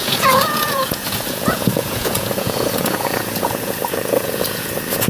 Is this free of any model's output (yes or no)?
no